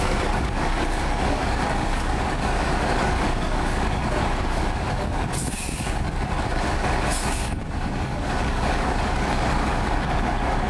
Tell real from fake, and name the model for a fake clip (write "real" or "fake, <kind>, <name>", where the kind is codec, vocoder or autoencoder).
fake, codec, DAC